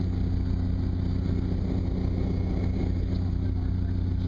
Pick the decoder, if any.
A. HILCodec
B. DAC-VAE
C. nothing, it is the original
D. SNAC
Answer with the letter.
C